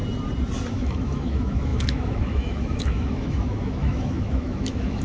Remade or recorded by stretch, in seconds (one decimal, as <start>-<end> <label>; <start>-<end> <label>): 0.0-0.7 recorded; 0.7-5.0 remade